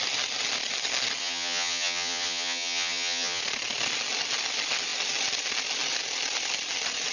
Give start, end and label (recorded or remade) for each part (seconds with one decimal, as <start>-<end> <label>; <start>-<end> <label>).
0.0-1.2 recorded; 1.2-3.4 remade; 3.4-7.1 recorded